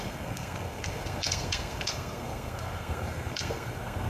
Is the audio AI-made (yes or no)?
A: yes